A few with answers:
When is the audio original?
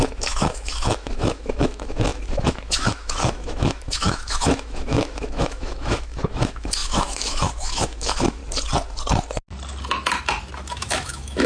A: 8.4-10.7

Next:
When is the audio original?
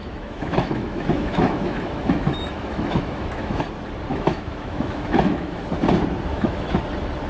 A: 3.6-4.1; 5.6-6.3; 6.8-7.3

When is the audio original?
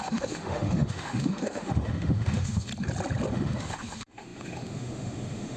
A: 2.7-3.3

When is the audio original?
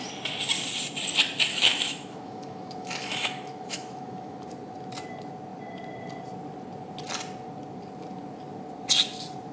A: 0.0-1.5; 4.5-9.5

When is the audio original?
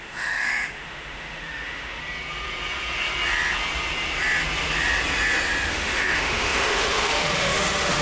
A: 2.0-5.7